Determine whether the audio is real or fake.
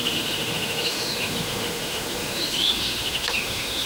fake